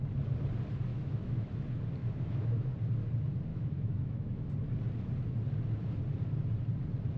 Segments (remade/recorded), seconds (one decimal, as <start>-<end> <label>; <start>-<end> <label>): 0.0-0.9 recorded; 0.9-1.5 remade; 1.5-2.0 recorded; 2.0-2.7 remade; 2.7-3.5 recorded; 3.5-4.5 remade; 4.5-7.2 recorded